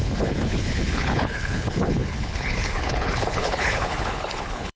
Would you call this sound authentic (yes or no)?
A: no